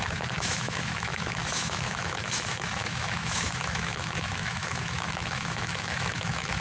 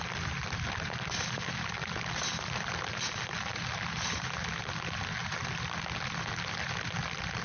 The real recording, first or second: second